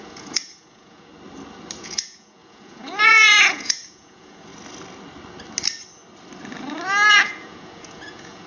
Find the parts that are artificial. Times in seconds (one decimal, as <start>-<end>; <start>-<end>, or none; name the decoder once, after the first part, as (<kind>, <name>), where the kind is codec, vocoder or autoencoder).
0.0-1.1 (vocoder, Vocos); 1.8-4.5; 7.1-8.5